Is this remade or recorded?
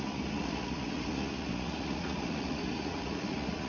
remade